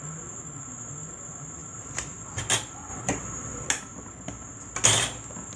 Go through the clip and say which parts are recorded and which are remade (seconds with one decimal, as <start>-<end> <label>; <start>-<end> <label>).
0.0-1.6 recorded; 1.6-2.4 remade; 2.4-2.9 recorded; 2.9-3.7 remade; 3.7-5.6 recorded